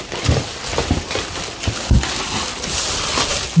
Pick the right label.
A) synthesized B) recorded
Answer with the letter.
B